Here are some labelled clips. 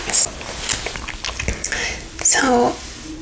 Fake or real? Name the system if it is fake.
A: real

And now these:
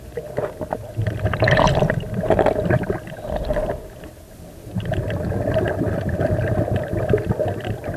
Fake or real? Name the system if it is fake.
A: real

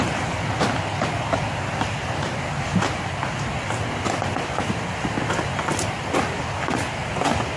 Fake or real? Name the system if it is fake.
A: real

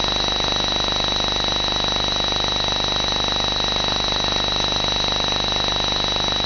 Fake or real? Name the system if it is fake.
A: real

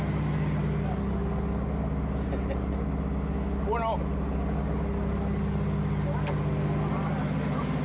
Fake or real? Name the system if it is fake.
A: real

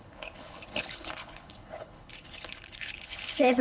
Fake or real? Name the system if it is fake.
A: fake, codec, HILCodec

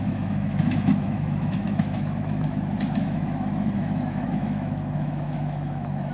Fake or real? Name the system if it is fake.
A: fake, autoencoder, DAC-VAE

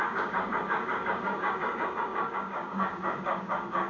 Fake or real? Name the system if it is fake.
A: fake, codec, DAC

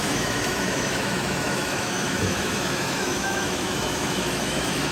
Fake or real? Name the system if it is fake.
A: fake, autoencoder, DAC-VAE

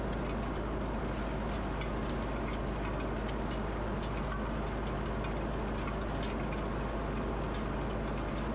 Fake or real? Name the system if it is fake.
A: real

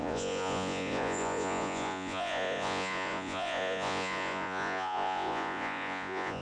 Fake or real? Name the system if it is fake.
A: fake, vocoder, Vocos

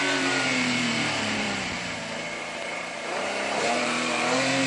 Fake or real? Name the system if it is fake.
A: fake, vocoder, BigVGAN v2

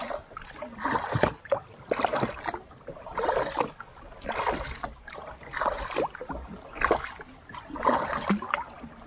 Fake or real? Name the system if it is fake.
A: real